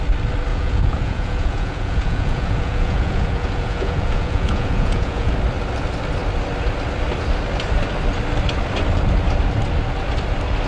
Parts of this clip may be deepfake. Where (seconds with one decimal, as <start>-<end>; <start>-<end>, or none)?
0.5-5.3